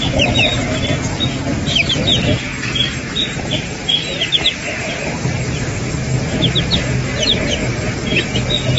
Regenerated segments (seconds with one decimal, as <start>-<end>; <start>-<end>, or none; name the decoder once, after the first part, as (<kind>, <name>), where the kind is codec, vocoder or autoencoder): 2.5-5.6 (vocoder, BigVGAN v2)